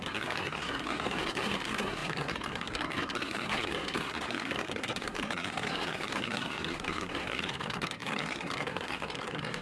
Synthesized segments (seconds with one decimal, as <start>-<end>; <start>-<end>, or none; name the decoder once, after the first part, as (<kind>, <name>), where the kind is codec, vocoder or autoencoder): 0.0-9.6 (codec, SNAC)